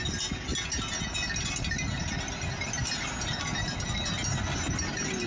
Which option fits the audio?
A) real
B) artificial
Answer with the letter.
A